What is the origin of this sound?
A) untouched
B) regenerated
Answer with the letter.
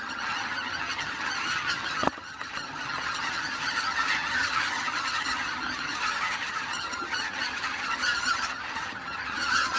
B